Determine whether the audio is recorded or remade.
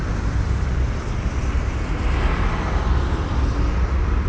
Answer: recorded